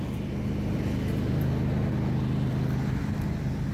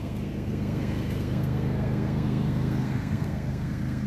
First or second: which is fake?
second